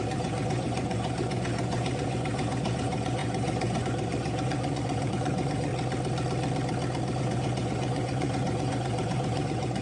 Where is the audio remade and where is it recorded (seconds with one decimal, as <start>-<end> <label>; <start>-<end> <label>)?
0.0-5.7 remade; 5.7-7.2 recorded; 7.2-9.8 remade